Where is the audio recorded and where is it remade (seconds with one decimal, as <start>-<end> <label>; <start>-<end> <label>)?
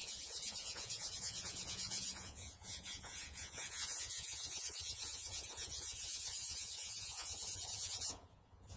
0.0-8.8 remade